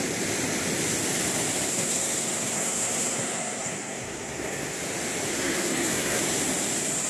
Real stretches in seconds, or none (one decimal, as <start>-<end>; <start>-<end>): 0.0-1.7; 4.8-5.3; 6.2-7.1